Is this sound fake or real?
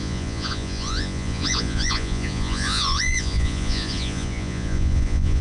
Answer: fake